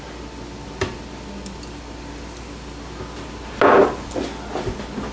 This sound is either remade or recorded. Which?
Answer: recorded